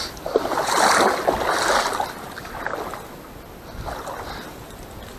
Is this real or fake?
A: real